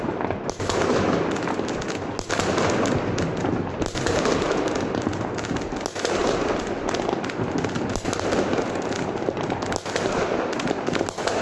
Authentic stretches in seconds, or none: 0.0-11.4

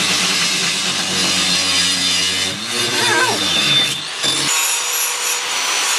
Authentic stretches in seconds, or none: 0.0-6.0

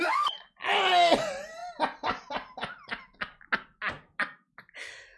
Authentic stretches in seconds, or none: 0.0-5.2

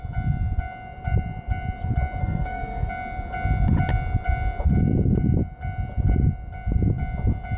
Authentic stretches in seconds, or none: 0.0-2.2; 2.9-7.6

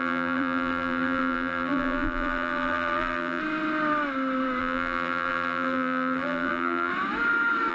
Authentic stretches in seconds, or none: 3.4-4.6; 6.9-7.7

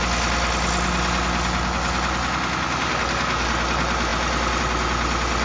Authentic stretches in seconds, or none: 0.0-5.4

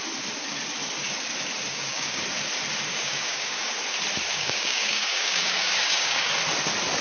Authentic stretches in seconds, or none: 0.0-1.7; 2.2-2.9; 3.7-4.3; 6.3-7.0